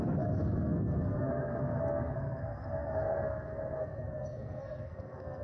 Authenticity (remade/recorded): remade